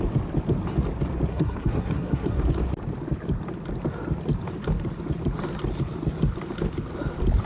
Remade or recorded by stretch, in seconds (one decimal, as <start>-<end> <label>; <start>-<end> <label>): 0.0-1.3 recorded; 1.3-2.4 remade; 2.4-7.5 recorded